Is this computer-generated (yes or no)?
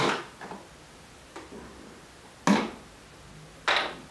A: no